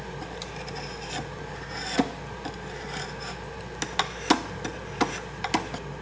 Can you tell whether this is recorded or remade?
recorded